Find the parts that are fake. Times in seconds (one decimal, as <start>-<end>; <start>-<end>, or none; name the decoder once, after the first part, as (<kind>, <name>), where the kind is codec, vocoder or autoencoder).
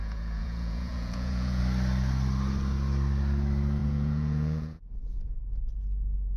0.0-1.6 (vocoder, Vocos); 3.8-5.0